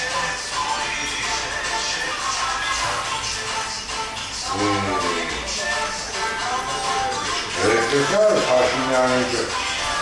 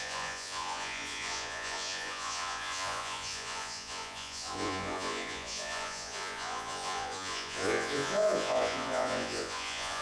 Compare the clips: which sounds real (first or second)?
first